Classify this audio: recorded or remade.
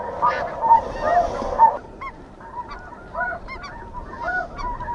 recorded